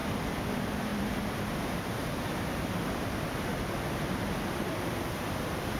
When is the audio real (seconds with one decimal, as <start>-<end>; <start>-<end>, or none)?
0.0-0.5; 3.5-4.5